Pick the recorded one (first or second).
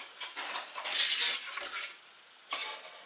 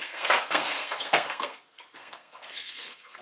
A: first